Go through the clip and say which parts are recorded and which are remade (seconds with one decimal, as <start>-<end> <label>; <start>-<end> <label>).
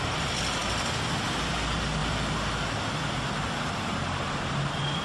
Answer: 0.0-5.0 recorded